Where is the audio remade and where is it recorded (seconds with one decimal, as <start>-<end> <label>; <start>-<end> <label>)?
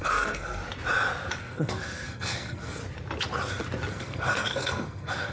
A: 0.0-0.6 remade; 0.6-1.4 recorded; 1.4-2.8 remade; 2.8-3.9 recorded; 3.9-5.3 remade